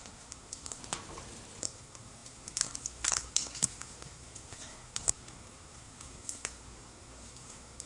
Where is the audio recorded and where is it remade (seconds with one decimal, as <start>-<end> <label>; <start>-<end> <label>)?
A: 0.0-0.8 remade; 0.8-1.6 recorded; 1.6-7.9 remade